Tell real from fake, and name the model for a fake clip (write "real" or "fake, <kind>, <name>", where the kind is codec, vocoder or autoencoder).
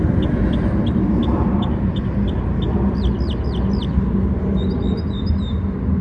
real